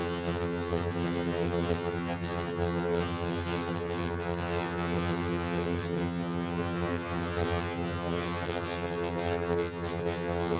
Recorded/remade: remade